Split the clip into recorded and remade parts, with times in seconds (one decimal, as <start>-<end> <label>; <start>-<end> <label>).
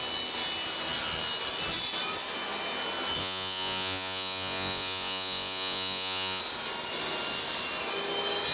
0.0-3.2 recorded; 3.2-6.4 remade; 6.4-8.5 recorded